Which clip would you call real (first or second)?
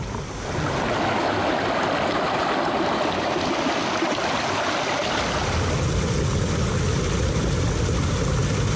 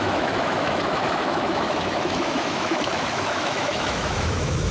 first